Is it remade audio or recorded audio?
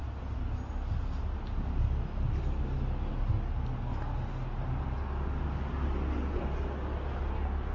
recorded